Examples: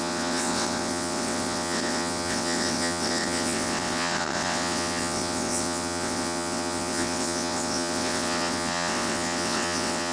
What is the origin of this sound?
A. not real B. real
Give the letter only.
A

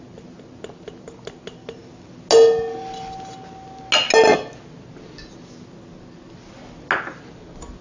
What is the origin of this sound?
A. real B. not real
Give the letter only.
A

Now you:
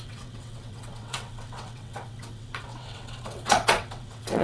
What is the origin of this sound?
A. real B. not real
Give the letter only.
B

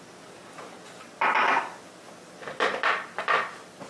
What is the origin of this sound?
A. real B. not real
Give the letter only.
A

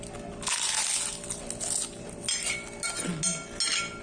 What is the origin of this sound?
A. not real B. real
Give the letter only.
B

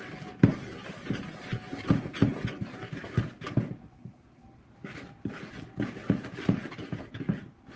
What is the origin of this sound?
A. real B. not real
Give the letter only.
A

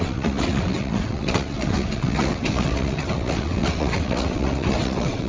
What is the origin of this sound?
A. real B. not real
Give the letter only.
B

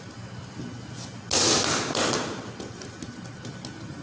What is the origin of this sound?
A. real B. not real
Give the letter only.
A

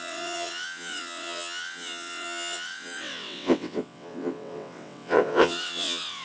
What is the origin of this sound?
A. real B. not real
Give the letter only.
B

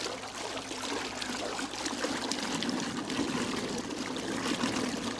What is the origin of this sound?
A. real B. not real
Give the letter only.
A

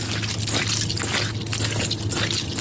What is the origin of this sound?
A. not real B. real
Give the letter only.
B